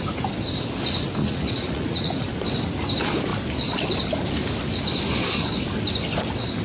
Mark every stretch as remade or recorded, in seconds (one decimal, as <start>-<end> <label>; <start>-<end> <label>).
0.0-1.2 recorded; 1.2-2.2 remade; 2.2-6.6 recorded